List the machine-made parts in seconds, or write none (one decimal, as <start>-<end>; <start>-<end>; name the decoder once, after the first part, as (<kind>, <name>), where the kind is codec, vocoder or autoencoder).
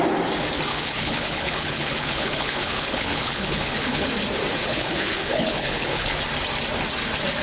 0.7-4.1 (codec, HILCodec); 4.6-6.2